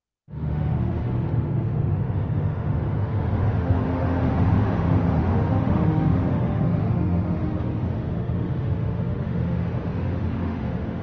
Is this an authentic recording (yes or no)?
no